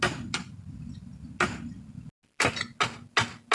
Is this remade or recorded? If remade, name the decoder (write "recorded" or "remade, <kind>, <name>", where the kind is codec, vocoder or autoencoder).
recorded